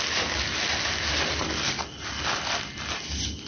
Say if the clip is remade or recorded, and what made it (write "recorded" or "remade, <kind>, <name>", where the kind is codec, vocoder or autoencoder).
recorded